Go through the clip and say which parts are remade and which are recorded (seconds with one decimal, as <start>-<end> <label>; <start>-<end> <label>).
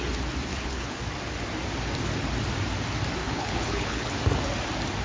0.0-0.5 recorded; 0.5-1.0 remade; 1.0-3.2 recorded; 3.2-4.1 remade; 4.1-5.0 recorded